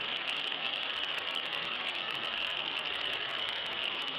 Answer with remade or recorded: remade